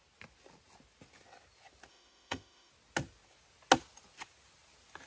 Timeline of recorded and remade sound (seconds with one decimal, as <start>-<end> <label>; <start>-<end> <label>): 0.0-1.9 recorded; 1.9-2.7 remade; 2.7-5.1 recorded